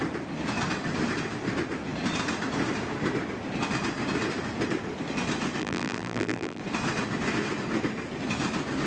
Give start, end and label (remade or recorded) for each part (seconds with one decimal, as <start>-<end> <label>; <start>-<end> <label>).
0.0-5.6 recorded; 5.6-6.6 remade; 6.6-8.9 recorded